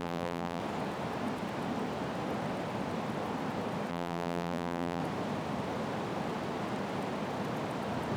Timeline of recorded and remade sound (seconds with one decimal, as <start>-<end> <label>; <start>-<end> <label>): 0.0-0.6 remade; 0.6-3.9 recorded; 3.9-5.0 remade; 5.0-8.2 recorded

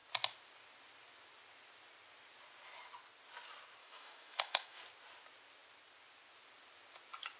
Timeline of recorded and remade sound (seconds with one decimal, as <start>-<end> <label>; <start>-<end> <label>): 0.0-3.8 recorded; 3.8-4.8 remade; 4.8-7.4 recorded

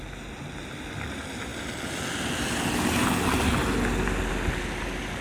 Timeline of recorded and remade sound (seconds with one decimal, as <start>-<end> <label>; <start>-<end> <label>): 0.0-5.2 recorded

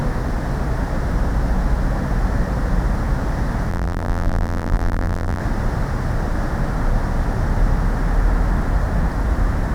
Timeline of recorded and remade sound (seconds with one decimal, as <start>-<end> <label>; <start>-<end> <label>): 0.0-3.7 recorded; 3.7-5.4 remade; 5.4-9.7 recorded

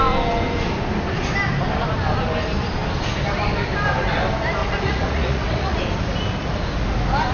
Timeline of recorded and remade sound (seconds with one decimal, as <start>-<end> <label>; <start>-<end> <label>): 0.0-4.6 recorded; 4.6-5.8 remade; 5.8-7.3 recorded

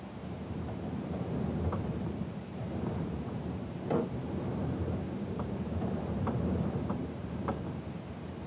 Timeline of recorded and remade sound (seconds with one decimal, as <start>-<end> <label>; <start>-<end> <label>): 0.0-8.5 remade